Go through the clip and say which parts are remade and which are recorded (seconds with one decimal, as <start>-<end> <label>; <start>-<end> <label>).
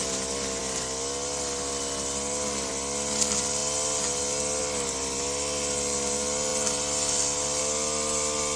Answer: 0.0-8.6 recorded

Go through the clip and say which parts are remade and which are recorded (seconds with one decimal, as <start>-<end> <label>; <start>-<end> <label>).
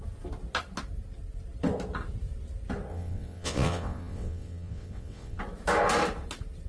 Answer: 0.0-2.9 recorded; 2.9-5.4 remade; 5.4-6.7 recorded